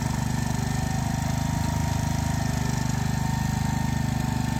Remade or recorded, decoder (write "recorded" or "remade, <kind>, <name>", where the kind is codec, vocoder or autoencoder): recorded